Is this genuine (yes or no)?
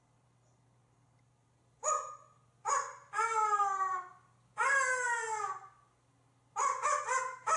yes